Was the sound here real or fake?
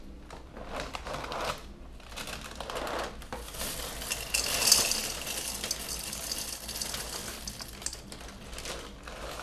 real